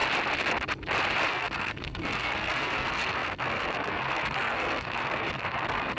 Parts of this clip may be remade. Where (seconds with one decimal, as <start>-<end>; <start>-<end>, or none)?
1.3-6.0